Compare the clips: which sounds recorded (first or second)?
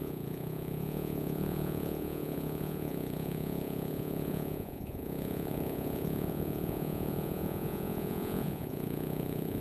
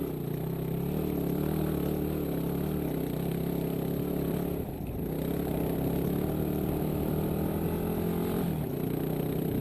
second